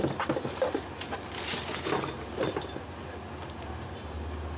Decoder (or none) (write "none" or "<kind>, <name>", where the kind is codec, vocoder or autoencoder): none